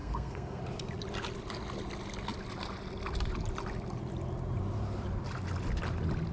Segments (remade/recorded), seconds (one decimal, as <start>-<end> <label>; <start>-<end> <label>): 0.0-0.6 remade; 0.6-6.3 recorded